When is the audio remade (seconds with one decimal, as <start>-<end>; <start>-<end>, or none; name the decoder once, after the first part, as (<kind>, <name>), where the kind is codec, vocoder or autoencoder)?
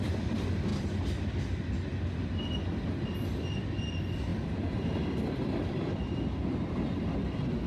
none